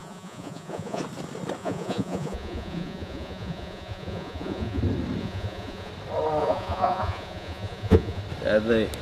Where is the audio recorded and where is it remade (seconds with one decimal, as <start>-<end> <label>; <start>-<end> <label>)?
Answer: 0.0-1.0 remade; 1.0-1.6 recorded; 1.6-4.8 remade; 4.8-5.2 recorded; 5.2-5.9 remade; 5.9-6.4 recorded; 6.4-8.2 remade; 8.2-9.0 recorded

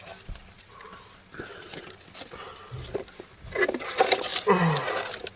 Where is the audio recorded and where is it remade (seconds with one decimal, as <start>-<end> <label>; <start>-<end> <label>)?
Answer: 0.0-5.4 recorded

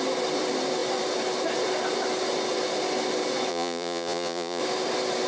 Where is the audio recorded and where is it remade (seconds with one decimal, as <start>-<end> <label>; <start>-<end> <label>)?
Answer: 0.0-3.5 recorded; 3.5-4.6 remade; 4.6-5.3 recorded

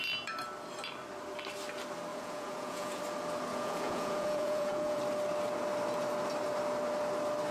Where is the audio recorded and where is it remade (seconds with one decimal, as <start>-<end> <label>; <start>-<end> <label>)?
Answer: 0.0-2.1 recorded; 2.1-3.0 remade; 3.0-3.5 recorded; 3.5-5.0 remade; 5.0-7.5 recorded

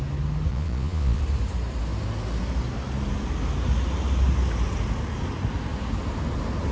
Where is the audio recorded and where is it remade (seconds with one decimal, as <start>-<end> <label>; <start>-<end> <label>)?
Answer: 0.0-0.5 recorded; 0.5-1.2 remade; 1.2-6.7 recorded

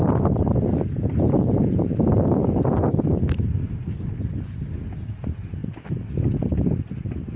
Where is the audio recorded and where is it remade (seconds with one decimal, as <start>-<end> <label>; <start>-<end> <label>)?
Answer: 0.0-7.4 recorded

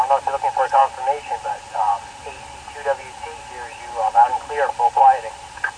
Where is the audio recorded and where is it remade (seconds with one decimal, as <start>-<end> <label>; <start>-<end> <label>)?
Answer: 0.0-5.8 recorded

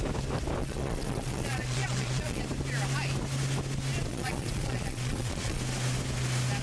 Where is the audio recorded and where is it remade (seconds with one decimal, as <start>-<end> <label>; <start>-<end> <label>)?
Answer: 0.0-0.6 recorded; 0.6-2.4 remade; 2.4-4.1 recorded; 4.1-5.6 remade; 5.6-6.6 recorded